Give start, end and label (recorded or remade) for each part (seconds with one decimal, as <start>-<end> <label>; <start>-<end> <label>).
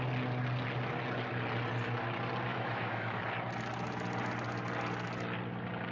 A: 0.0-2.5 recorded; 2.5-3.2 remade; 3.2-5.9 recorded